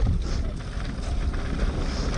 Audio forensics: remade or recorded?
recorded